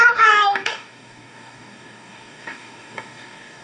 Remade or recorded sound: remade